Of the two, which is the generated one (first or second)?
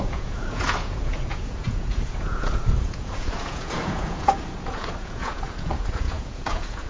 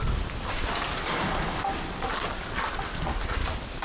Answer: first